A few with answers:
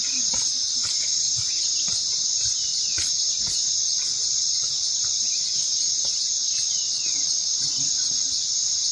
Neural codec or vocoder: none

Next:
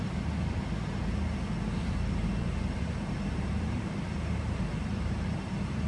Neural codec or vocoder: vocoder, BigVGAN v2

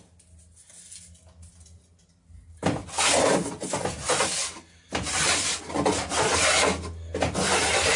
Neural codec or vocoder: none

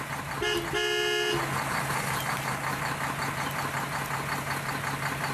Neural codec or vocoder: none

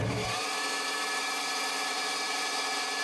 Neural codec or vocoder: vocoder, BigVGAN v2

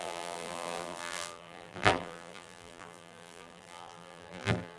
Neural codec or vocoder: vocoder, BigVGAN v2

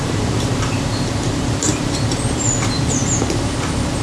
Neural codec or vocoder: vocoder, BigVGAN v2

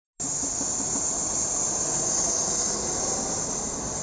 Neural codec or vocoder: none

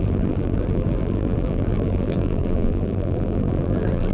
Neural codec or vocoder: vocoder, BigVGAN v2